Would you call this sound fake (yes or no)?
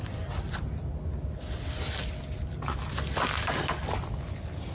no